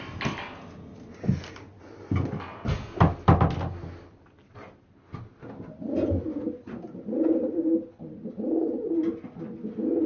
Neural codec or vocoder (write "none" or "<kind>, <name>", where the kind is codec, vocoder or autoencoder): none